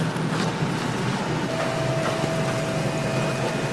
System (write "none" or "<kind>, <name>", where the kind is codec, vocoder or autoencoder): none